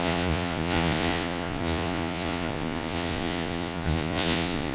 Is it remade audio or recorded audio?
remade